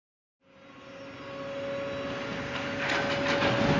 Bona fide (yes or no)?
yes